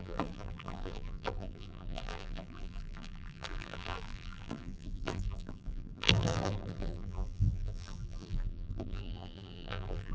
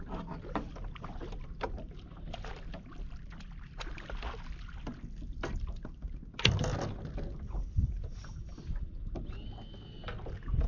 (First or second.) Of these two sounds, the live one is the second